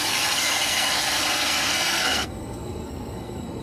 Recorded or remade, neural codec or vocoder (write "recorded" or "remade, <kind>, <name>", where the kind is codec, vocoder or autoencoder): remade, codec, SNAC